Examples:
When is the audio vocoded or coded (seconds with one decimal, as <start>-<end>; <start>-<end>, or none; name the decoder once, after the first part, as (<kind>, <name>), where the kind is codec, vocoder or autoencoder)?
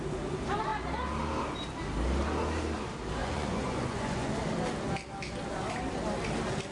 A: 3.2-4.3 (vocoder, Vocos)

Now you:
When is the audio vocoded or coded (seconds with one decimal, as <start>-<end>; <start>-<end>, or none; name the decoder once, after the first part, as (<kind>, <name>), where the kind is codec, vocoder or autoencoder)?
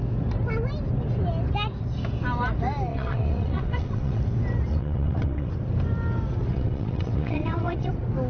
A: 2.9-4.2 (vocoder, WaveNeXt); 4.7-5.5; 6.5-7.9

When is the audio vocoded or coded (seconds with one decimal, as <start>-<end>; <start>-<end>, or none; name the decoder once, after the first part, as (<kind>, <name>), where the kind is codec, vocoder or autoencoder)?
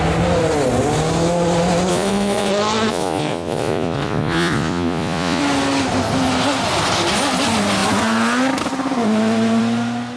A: 1.9-2.5 (vocoder, Vocos); 2.9-5.4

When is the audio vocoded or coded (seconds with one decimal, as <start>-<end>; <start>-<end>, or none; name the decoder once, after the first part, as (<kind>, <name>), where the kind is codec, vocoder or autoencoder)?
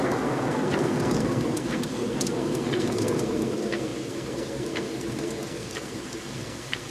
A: 0.0-6.9 (codec, SNAC)